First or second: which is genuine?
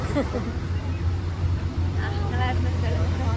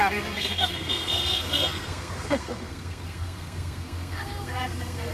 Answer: first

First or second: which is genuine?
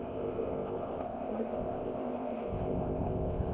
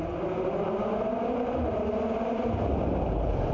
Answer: second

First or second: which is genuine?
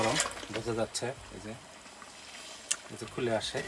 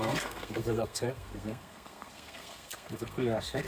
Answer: first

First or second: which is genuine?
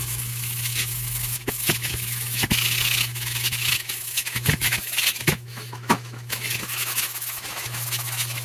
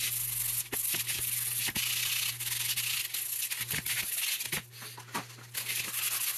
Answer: second